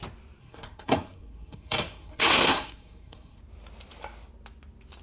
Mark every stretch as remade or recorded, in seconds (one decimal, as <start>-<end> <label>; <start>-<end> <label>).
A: 0.0-0.4 recorded; 0.4-3.4 remade; 3.4-5.0 recorded